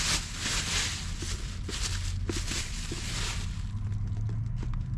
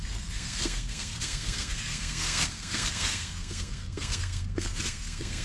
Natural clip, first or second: first